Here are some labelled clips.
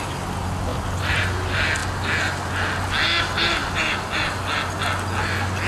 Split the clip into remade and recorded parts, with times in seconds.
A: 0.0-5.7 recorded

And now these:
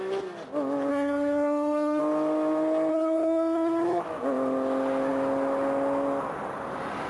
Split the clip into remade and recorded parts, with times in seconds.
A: 0.0-0.9 recorded; 0.9-2.0 remade; 2.0-2.9 recorded; 2.9-4.0 remade; 4.0-7.1 recorded

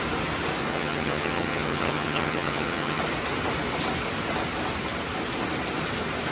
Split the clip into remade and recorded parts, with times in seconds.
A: 0.0-0.7 recorded; 0.7-3.0 remade; 3.0-6.3 recorded

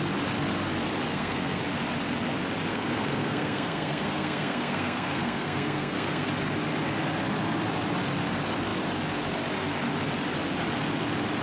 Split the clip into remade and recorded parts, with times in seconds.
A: 0.0-1.1 recorded; 1.1-1.6 remade; 1.6-2.7 recorded; 2.7-6.3 remade; 6.3-11.4 recorded

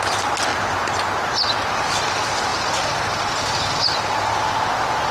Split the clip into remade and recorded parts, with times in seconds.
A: 0.0-5.1 recorded